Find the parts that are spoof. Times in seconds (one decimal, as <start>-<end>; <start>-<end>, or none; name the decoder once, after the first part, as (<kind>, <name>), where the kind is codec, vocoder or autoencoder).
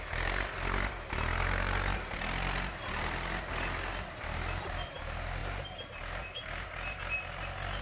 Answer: none